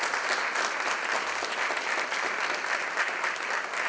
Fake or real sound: real